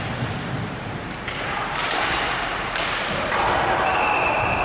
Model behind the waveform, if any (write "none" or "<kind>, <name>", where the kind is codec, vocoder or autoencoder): vocoder, BigVGAN v2